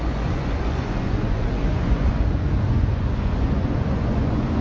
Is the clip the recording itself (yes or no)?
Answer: no